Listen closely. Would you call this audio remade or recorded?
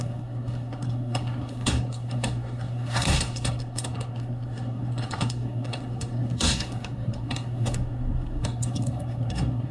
remade